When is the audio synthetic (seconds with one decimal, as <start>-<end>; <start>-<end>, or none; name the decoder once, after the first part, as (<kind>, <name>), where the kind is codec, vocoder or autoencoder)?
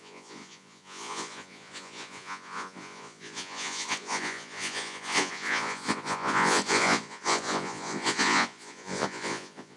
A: 0.0-9.8 (vocoder, Vocos)